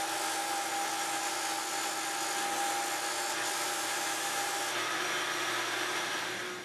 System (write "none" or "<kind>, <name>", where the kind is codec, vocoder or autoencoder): none